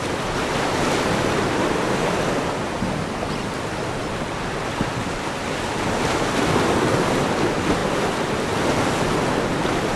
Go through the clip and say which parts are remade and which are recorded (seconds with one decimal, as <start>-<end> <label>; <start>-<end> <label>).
0.0-10.0 recorded